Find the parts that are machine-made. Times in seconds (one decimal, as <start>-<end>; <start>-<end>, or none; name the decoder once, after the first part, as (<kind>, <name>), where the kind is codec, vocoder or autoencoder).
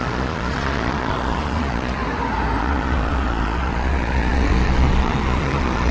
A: 0.0-2.0 (vocoder, Vocos); 2.6-5.9